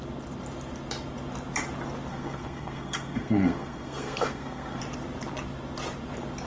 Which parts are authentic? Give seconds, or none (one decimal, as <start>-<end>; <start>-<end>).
0.0-2.1; 4.8-6.5